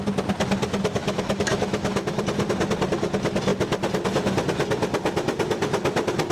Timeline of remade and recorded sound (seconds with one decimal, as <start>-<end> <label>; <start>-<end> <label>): 0.0-1.0 recorded; 1.0-2.2 remade; 2.2-6.3 recorded